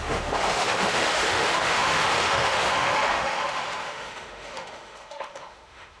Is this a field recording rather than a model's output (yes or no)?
no